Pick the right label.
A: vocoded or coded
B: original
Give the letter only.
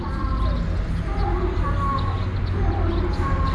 B